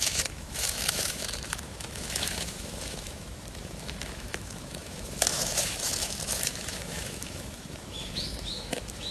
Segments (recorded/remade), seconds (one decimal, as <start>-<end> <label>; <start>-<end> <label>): 0.0-9.1 remade